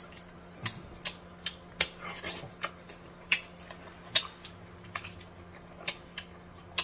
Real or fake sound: real